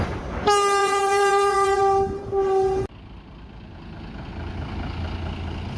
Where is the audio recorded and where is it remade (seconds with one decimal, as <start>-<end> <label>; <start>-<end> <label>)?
0.0-0.8 recorded; 0.8-1.8 remade; 1.8-5.8 recorded